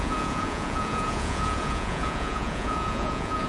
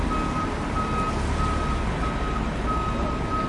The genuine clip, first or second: second